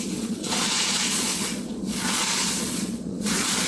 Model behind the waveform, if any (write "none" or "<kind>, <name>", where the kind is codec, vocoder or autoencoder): vocoder, Vocos